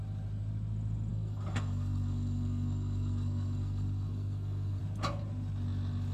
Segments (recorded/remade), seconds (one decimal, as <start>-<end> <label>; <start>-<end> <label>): 0.0-1.1 recorded; 1.1-4.8 remade; 4.8-6.1 recorded